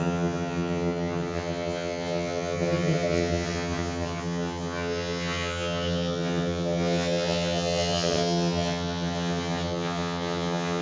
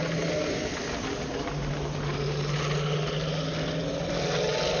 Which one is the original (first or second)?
second